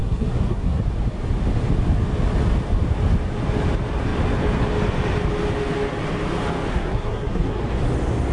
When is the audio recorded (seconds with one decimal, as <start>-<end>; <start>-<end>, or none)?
0.8-6.7; 7.6-8.3